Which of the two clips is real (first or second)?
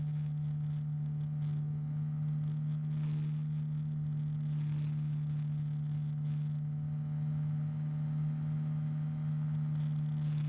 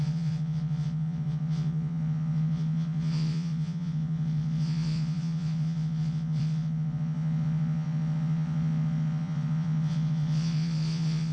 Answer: first